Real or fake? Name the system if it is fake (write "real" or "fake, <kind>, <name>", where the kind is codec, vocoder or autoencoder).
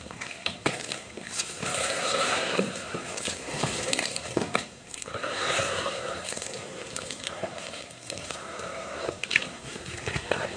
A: fake, codec, SNAC